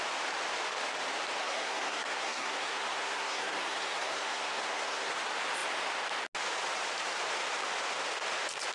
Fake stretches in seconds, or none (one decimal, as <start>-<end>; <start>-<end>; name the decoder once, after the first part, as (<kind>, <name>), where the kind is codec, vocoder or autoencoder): 1.4-5.1 (codec, SNAC)